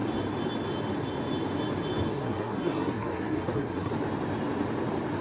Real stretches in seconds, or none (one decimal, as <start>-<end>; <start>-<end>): 0.0-2.1; 3.9-5.2